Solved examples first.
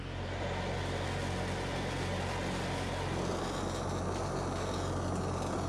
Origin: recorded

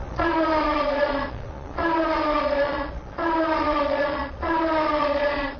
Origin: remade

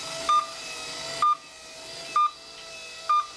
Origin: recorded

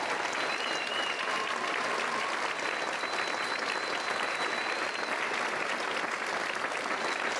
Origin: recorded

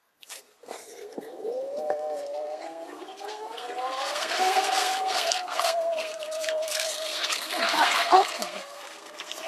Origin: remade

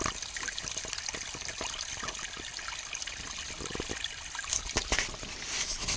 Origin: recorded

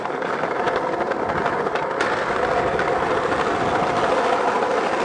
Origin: recorded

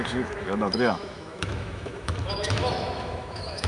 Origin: remade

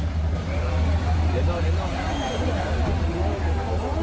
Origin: recorded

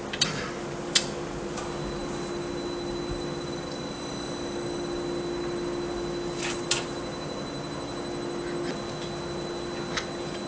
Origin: recorded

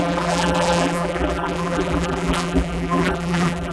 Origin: remade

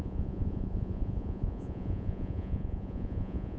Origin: remade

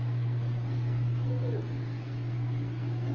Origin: remade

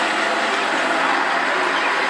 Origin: recorded